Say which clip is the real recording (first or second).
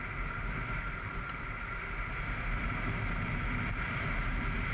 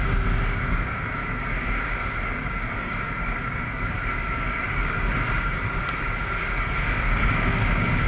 first